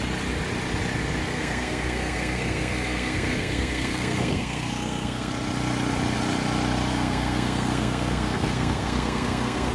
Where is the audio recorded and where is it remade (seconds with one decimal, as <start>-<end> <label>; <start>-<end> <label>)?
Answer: 0.0-1.2 recorded; 1.2-5.3 remade; 5.3-6.9 recorded; 6.9-9.7 remade